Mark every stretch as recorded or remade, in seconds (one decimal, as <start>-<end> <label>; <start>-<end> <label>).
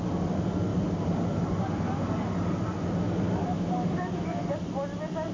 0.0-3.4 recorded; 3.4-4.4 remade; 4.4-5.3 recorded